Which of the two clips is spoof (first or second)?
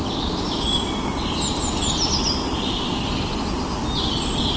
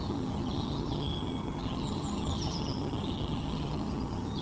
second